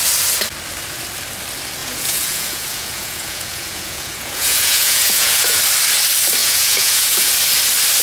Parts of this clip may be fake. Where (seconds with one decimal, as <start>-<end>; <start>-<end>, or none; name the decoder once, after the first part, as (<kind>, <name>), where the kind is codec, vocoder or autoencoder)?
1.8-5.6 (vocoder, Vocos); 6.4-7.3

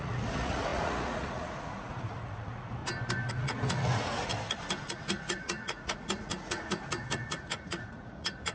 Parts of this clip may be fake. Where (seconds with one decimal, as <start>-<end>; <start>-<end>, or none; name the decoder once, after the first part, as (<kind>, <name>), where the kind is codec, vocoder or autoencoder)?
0.0-2.8 (vocoder, Vocos); 3.3-4.3; 4.8-8.5

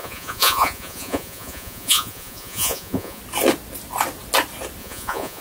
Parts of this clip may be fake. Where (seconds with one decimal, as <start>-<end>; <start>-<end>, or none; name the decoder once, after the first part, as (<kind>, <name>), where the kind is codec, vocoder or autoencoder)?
0.0-3.2 (vocoder, Vocos); 4.8-5.4

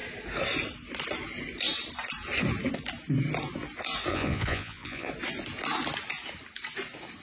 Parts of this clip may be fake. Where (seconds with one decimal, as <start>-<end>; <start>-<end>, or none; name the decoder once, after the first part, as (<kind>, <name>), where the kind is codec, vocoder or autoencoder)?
4.1-5.1 (vocoder, Vocos)

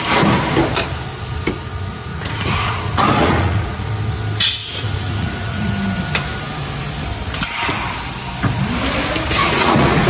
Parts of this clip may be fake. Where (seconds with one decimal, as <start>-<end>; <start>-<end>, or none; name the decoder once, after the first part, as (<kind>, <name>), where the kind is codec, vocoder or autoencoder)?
1.9-3.9 (vocoder, Vocos); 4.6-5.7; 9.4-10.1

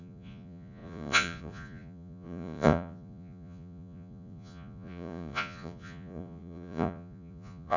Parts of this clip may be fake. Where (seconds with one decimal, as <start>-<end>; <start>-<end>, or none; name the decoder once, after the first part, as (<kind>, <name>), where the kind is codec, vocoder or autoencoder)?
0.0-7.8 (vocoder, Vocos)

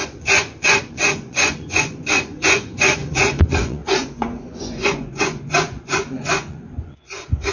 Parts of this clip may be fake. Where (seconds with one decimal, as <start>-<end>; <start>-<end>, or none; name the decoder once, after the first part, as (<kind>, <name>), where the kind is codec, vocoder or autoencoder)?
0.0-7.5 (vocoder, Vocos)

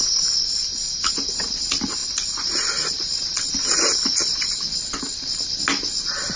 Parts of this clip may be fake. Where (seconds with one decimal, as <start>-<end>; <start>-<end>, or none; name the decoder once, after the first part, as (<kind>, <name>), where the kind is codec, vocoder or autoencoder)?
none